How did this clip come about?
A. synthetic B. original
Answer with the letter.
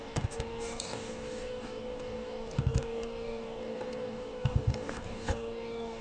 A